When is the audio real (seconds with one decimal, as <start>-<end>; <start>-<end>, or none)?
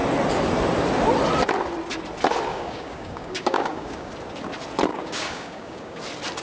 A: 0.0-2.5; 4.1-4.9; 6.0-6.4